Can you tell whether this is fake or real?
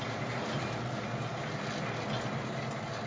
real